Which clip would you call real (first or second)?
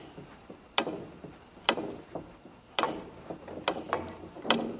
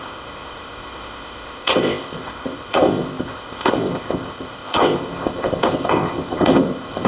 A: first